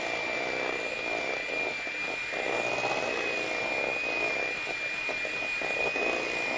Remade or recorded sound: recorded